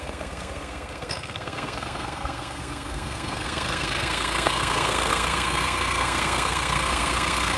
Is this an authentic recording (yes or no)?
no